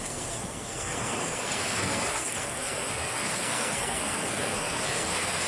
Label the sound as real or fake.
fake